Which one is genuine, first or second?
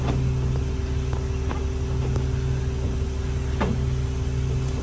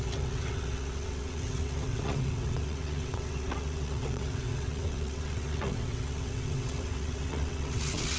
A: first